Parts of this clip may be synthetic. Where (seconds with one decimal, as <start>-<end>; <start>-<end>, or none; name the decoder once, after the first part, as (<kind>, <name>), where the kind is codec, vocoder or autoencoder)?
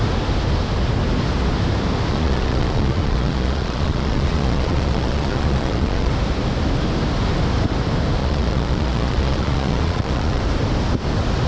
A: 2.1-6.1 (vocoder, Vocos); 8.2-10.4